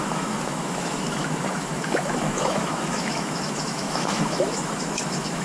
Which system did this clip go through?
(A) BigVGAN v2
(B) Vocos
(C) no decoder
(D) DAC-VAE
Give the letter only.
D